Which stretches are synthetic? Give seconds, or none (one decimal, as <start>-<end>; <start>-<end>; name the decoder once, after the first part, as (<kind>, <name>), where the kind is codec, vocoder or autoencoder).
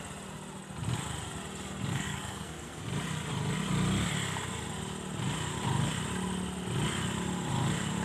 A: 1.9-2.8 (codec, SNAC)